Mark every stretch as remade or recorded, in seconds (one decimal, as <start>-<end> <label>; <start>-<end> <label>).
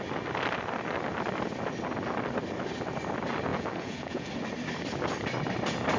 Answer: 0.0-3.5 recorded; 3.5-4.3 remade; 4.3-6.0 recorded